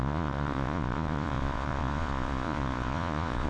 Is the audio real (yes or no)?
no